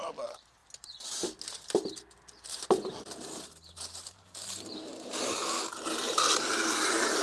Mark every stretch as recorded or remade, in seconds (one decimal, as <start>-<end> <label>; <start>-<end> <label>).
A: 0.0-0.6 remade; 0.6-3.7 recorded; 3.7-7.2 remade